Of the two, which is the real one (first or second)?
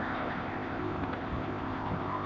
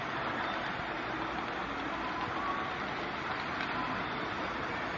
second